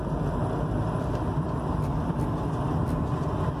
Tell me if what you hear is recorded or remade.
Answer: recorded